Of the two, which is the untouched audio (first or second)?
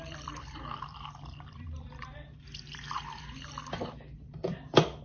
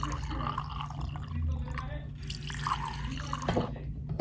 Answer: second